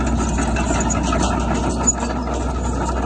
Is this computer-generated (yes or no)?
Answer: no